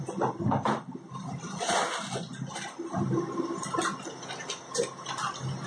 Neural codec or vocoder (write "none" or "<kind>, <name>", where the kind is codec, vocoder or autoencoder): none